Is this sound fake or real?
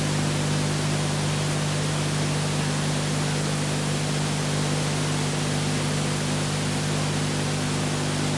real